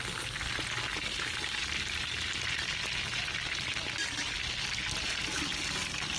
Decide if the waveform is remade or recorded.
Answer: recorded